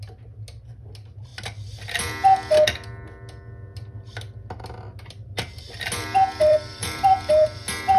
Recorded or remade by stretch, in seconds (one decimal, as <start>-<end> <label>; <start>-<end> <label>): 0.0-6.5 recorded; 6.5-7.6 remade; 7.6-8.0 recorded

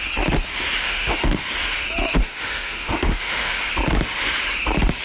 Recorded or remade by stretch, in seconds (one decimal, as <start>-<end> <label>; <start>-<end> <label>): 0.0-0.8 recorded; 0.8-1.4 remade; 1.4-2.2 recorded; 2.2-3.7 remade; 3.7-5.0 recorded

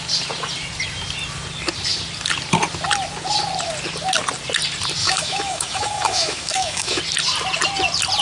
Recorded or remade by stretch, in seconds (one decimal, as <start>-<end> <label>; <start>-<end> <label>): 0.0-5.0 recorded; 5.0-7.0 remade; 7.0-8.2 recorded

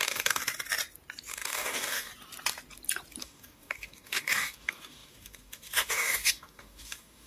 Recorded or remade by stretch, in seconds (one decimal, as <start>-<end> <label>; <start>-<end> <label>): 0.0-0.4 remade; 0.4-1.3 recorded; 1.3-2.1 remade; 2.1-3.2 recorded; 3.2-7.3 remade

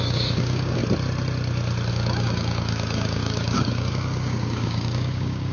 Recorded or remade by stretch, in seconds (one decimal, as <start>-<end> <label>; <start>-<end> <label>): 0.0-0.8 remade; 0.8-1.9 recorded; 1.9-5.5 remade

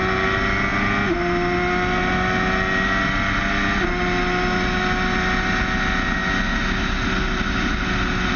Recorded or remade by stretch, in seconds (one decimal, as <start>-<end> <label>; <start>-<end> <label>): 0.0-8.4 recorded